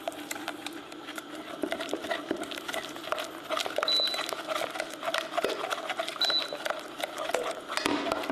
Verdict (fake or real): real